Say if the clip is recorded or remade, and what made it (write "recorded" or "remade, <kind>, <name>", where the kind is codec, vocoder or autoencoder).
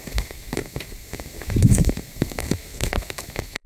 remade, codec, SNAC